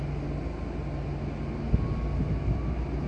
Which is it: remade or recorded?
recorded